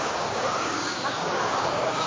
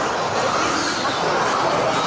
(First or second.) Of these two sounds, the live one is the second